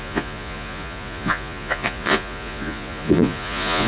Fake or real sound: fake